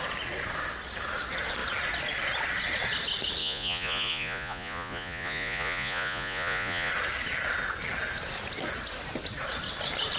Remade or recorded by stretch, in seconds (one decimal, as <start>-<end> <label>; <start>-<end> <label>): 0.0-3.4 recorded; 3.4-6.9 remade; 6.9-10.2 recorded